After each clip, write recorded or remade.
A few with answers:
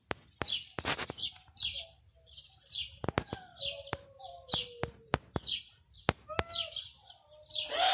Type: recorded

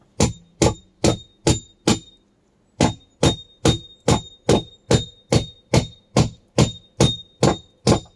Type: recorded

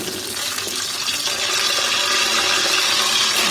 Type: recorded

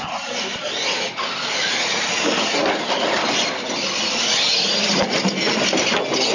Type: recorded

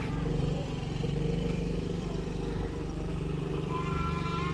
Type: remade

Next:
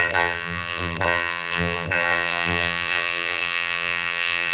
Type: remade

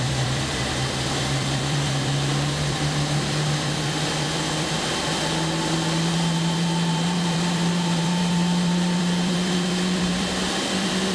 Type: remade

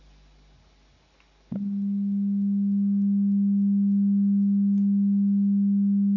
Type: recorded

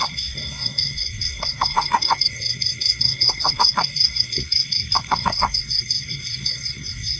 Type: remade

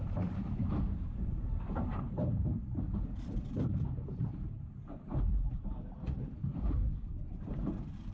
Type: remade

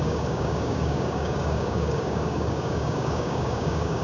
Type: remade